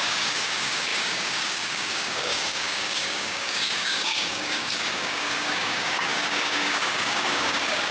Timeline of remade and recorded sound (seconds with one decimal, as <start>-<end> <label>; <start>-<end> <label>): 0.0-7.9 remade